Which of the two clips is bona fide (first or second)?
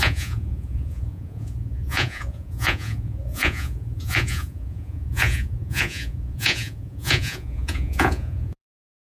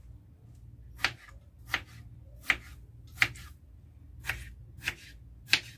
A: second